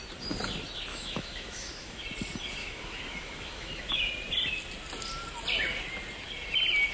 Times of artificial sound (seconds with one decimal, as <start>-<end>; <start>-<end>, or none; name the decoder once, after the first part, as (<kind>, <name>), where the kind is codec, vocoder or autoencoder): 0.9-2.0 (autoencoder, DAC-VAE); 2.6-4.1